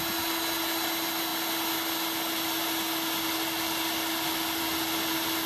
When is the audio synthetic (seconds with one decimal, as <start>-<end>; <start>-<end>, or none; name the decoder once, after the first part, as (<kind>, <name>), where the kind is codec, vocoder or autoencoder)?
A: none